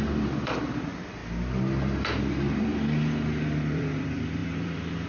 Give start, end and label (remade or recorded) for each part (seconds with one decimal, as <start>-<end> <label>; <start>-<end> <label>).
0.0-1.2 remade; 1.2-2.5 recorded; 2.5-5.1 remade